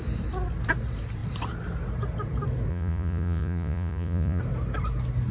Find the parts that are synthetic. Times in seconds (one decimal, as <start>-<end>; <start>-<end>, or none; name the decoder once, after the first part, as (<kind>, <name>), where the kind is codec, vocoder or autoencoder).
2.7-4.4 (vocoder, Vocos)